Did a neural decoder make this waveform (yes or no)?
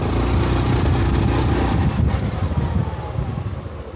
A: no